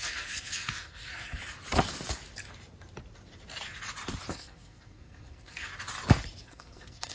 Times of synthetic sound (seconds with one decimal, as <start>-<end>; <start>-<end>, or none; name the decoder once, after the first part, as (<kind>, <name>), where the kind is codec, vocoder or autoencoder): 0.0-1.4 (codec, SNAC); 4.3-5.7; 6.4-7.1